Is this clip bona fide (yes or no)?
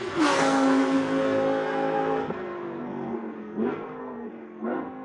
no